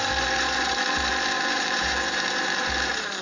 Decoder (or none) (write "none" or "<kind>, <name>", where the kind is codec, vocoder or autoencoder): vocoder, BigVGAN v2